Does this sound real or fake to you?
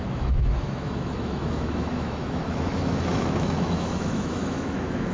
fake